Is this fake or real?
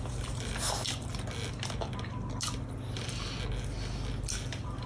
real